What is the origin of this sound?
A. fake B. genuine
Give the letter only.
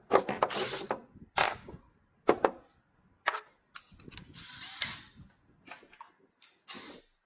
B